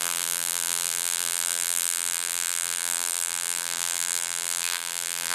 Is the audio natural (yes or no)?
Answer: no